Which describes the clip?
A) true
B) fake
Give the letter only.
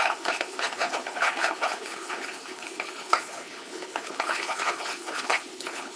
B